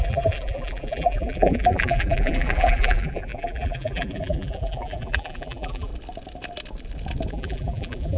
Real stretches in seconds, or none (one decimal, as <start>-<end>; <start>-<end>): 5.9-7.3